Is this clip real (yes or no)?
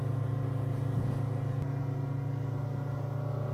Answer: yes